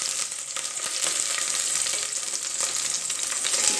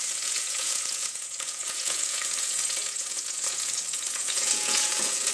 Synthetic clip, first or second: second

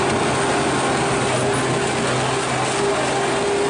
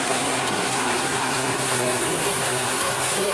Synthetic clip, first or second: second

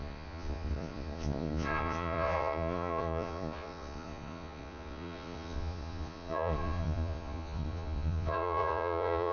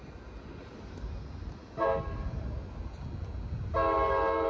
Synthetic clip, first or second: first